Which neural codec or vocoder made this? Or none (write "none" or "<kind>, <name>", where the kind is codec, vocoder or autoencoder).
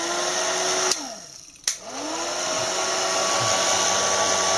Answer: none